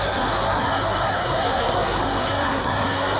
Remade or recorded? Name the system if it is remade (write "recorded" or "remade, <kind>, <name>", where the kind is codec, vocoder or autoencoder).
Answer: remade, codec, SNAC